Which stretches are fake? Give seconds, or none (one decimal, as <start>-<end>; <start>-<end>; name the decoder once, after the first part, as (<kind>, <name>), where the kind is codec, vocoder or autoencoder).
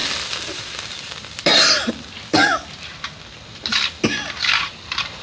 0.5-1.5 (vocoder, BigVGAN v2); 4.6-5.2